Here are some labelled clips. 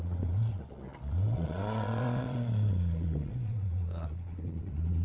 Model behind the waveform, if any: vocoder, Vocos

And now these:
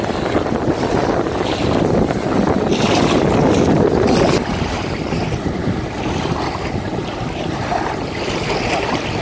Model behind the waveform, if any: none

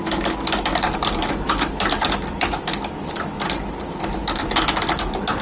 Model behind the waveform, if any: none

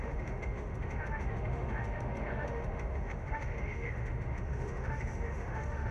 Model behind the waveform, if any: autoencoder, DAC-VAE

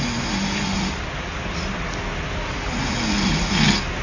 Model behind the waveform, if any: none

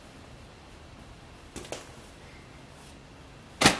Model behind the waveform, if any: none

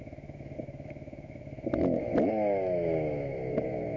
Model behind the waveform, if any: autoencoder, DAC-VAE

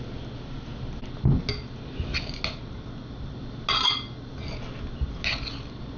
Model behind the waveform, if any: none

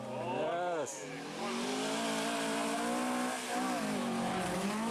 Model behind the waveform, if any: none